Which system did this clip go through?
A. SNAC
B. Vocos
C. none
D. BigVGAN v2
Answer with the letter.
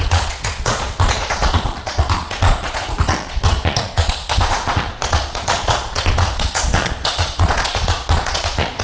B